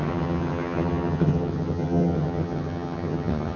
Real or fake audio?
fake